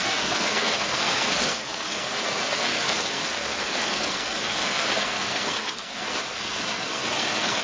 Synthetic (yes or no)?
yes